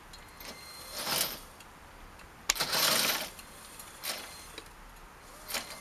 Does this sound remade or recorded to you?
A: recorded